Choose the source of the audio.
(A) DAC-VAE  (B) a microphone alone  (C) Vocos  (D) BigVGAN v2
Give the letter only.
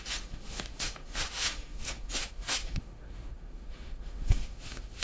A